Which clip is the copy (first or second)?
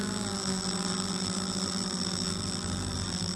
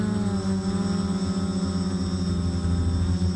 first